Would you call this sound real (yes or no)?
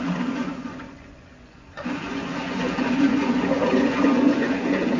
no